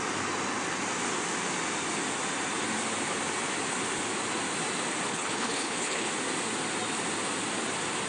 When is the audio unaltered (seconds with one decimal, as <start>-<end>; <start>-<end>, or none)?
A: 0.0-5.1; 6.1-8.1